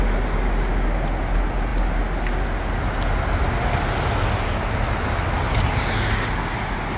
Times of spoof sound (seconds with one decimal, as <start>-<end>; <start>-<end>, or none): none